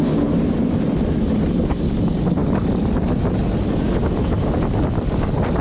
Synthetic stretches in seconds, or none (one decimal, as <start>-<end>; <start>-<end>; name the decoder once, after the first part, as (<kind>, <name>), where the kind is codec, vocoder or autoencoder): none